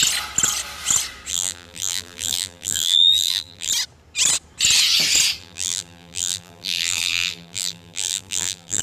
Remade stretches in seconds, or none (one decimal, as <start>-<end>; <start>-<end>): 1.3-3.7; 5.4-8.8